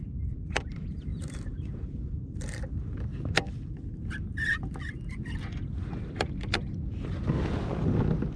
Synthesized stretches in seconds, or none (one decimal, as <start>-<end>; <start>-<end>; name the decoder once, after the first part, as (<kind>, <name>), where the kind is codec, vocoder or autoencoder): 1.1-3.5 (vocoder, BigVGAN v2)